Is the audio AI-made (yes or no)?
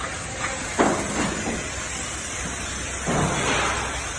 no